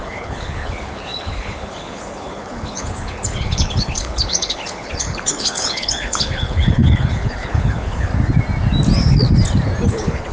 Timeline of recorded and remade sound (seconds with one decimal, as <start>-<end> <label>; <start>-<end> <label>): 0.0-8.1 remade; 8.1-9.9 recorded; 9.9-10.3 remade